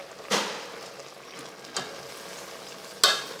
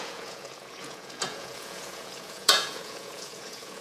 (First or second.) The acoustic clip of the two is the first